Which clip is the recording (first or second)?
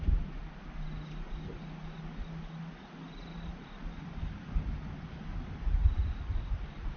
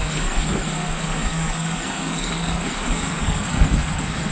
first